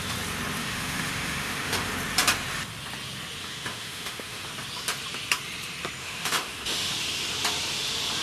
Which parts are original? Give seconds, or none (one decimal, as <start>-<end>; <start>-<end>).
0.0-0.6; 1.9-3.4; 4.5-6.0; 6.9-8.2